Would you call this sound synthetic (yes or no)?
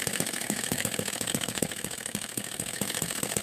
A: yes